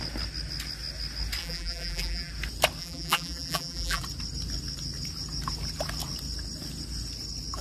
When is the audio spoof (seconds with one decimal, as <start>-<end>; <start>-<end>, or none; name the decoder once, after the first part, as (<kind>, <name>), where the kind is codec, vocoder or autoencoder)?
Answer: 1.4-2.3 (vocoder, BigVGAN v2); 2.8-4.0